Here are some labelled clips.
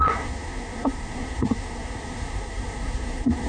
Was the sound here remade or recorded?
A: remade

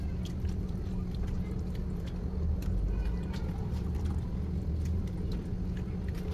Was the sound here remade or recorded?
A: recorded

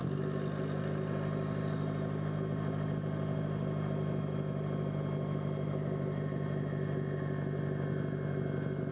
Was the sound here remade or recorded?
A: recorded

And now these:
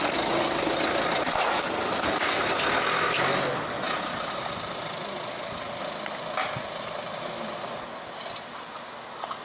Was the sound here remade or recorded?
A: recorded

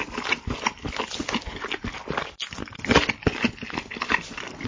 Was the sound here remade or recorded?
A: recorded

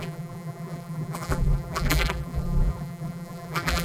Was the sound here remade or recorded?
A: remade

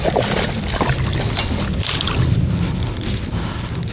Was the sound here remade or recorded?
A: recorded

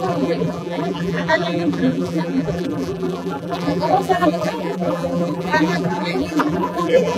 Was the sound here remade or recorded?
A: remade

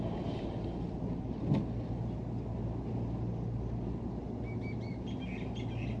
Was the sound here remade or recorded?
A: recorded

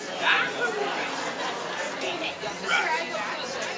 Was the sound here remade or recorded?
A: recorded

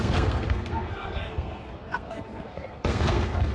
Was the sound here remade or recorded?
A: remade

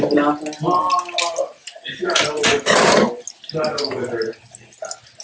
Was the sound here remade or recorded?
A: recorded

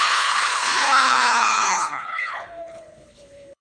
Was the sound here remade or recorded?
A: remade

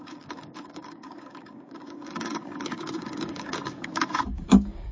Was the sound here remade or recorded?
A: remade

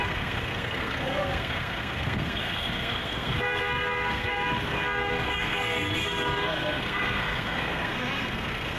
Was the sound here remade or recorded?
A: remade